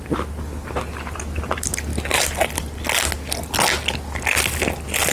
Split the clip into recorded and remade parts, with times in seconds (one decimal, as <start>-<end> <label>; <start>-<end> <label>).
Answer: 0.0-5.1 recorded